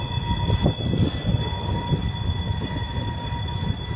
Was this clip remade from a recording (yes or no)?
no